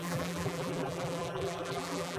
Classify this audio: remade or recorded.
remade